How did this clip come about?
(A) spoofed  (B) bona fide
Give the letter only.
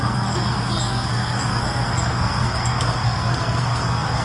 A